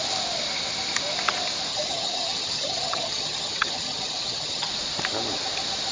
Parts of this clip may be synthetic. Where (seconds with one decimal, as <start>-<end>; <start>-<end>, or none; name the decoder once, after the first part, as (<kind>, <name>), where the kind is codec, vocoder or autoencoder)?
1.7-4.7 (vocoder, HiFi-GAN)